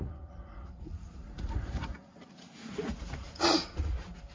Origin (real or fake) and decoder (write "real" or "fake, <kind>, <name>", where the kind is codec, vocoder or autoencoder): fake, vocoder, Vocos